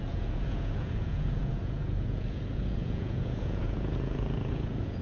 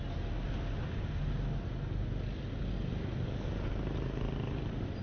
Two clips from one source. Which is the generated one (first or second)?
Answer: first